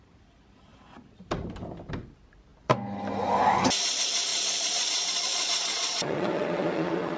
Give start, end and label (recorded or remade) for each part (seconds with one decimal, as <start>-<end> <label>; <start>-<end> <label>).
0.0-4.3 recorded; 4.3-7.2 remade